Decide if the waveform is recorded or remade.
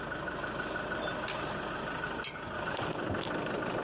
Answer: recorded